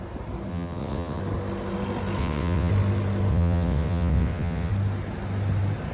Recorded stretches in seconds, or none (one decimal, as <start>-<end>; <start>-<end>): 0.0-0.5; 1.2-2.2; 2.7-3.3; 4.7-5.9